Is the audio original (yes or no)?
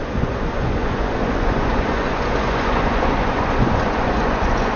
no